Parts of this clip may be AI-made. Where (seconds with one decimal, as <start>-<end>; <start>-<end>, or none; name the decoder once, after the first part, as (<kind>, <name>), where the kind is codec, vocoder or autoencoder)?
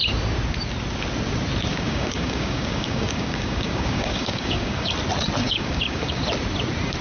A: 1.7-4.9 (codec, DAC); 5.4-6.2